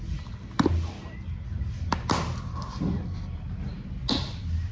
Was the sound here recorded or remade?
recorded